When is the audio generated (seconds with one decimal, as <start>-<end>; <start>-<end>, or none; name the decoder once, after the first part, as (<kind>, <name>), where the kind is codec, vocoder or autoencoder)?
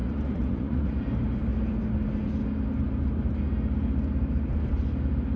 0.0-1.0 (vocoder, Vocos)